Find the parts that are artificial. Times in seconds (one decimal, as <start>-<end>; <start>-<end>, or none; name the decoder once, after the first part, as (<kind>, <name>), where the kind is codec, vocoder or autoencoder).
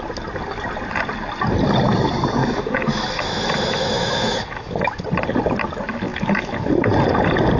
2.4-5.0 (autoencoder, DAC-VAE); 6.1-6.7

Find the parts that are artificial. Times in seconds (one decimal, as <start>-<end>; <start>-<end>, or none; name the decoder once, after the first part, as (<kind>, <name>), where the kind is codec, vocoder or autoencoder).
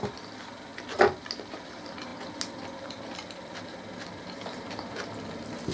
none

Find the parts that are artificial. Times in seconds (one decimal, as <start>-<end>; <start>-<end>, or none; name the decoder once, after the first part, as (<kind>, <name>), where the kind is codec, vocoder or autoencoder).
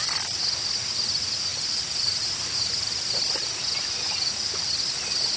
none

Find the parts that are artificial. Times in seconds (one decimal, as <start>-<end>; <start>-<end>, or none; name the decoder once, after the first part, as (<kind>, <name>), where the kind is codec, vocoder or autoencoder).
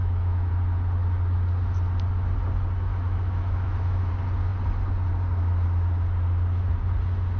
0.0-0.5 (autoencoder, DAC-VAE); 2.9-4.1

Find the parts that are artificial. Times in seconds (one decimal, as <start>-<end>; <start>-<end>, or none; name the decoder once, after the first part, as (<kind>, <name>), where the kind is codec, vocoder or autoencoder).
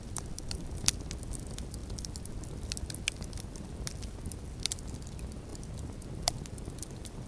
none